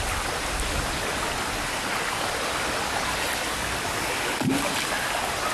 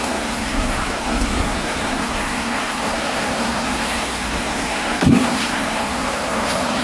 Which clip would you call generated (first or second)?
second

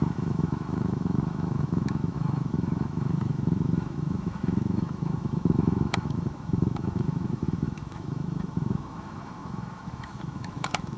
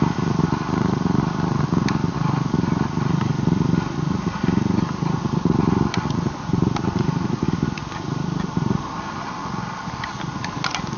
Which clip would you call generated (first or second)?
first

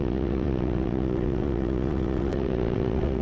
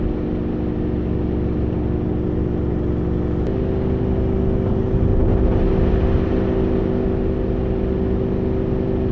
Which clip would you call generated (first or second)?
first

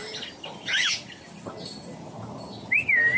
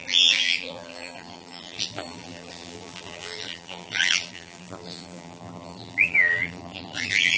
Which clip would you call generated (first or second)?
second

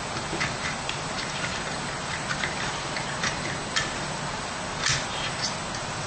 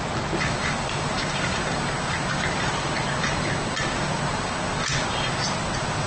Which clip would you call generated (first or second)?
first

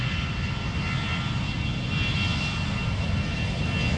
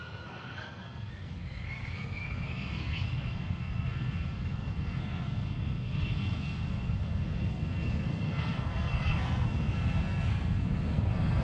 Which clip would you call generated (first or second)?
second